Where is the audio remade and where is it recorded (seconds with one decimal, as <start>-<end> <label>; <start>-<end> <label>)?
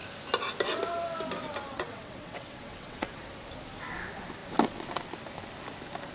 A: 0.0-1.7 recorded; 1.7-3.2 remade; 3.2-6.1 recorded